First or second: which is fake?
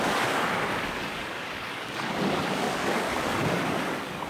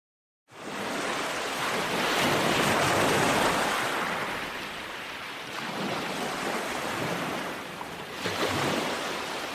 first